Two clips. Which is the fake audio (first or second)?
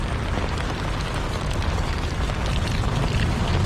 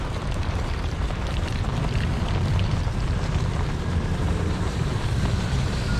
second